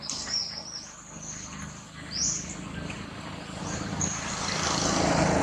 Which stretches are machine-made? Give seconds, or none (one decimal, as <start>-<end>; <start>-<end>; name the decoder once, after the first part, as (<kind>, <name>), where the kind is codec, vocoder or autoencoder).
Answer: 0.0-0.4 (vocoder, BigVGAN v2); 3.6-5.4